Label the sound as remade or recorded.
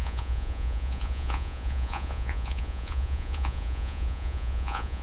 remade